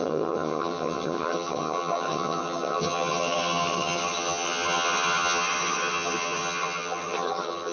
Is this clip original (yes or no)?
no